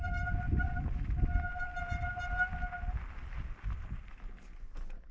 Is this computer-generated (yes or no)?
no